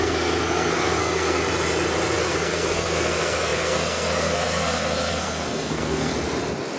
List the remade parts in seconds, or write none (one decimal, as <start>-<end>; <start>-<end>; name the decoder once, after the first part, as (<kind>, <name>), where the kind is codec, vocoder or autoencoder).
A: 0.0-1.4 (codec, SNAC); 2.2-6.1